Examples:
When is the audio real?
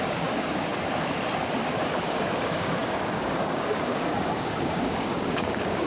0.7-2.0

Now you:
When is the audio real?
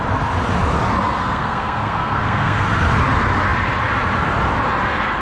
0.0-1.2; 2.6-5.2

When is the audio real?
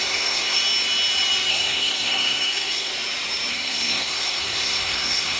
0.6-1.5; 2.9-3.5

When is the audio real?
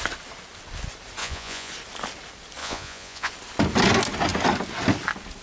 0.0-1.2; 1.7-2.6; 3.3-5.4